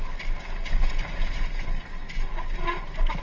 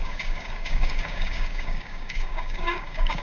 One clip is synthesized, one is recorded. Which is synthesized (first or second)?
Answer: second